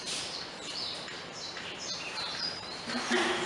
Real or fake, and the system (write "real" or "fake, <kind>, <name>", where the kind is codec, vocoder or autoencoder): fake, vocoder, BigVGAN v2